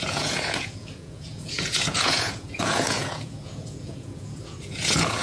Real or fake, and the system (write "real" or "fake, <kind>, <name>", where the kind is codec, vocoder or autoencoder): fake, vocoder, Vocos